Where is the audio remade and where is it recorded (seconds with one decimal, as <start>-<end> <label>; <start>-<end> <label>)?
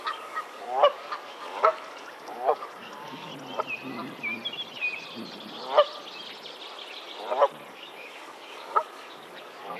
0.0-3.3 remade; 3.3-7.7 recorded; 7.7-9.8 remade